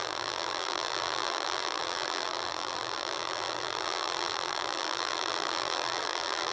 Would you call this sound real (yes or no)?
no